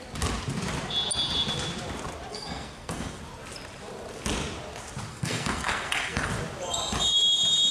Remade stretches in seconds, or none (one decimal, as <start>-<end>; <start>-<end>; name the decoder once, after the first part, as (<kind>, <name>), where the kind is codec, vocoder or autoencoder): 2.3-3.2 (codec, SNAC); 5.1-6.3